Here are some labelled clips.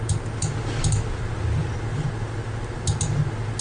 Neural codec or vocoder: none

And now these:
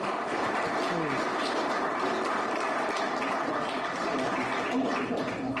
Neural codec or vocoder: none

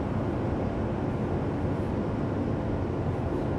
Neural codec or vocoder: none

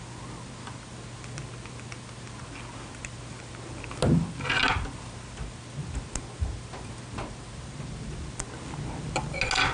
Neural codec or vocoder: none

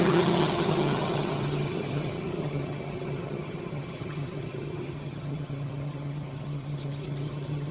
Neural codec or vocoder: vocoder, HiFi-GAN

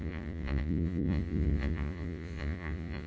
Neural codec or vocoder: vocoder, Vocos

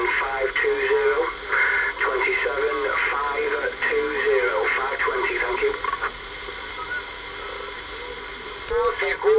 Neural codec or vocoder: none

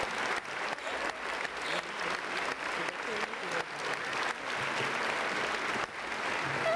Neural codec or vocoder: none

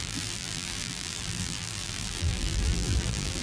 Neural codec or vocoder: vocoder, BigVGAN v2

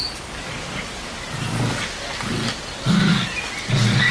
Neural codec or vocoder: none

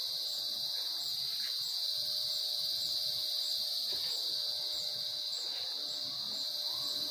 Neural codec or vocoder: none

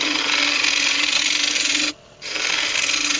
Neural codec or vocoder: none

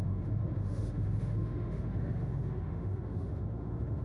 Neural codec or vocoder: autoencoder, DAC-VAE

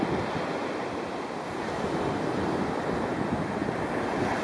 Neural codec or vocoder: none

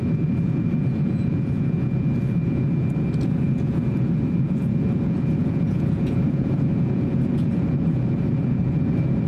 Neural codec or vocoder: vocoder, Vocos